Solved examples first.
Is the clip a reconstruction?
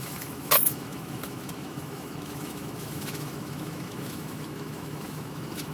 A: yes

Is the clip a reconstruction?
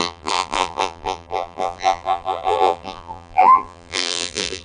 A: yes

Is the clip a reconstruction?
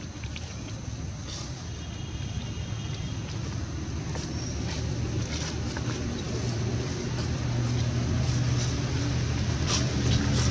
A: no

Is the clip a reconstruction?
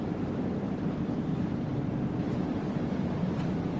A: yes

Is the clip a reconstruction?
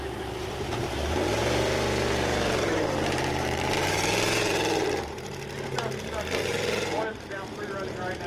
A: yes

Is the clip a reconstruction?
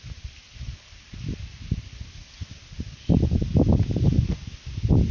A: no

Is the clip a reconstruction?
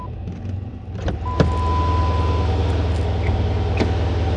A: no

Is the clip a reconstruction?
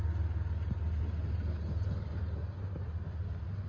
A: no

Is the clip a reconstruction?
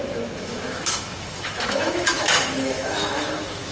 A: yes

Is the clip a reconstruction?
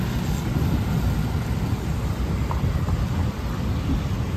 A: no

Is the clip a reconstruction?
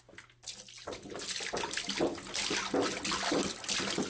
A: no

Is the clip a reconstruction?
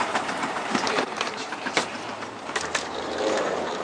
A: yes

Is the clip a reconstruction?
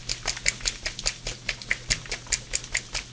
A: no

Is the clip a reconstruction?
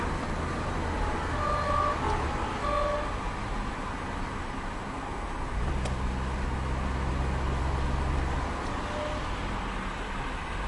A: no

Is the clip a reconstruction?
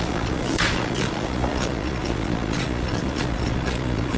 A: yes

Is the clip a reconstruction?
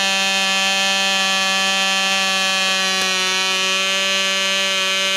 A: no